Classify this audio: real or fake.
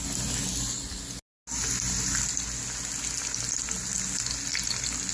real